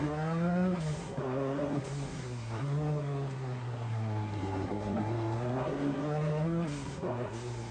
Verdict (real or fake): fake